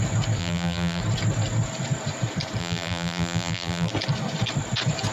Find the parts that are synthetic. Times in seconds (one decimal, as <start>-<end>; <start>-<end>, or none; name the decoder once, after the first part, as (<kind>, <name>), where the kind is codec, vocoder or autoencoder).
0.4-1.0 (vocoder, BigVGAN v2); 2.6-3.9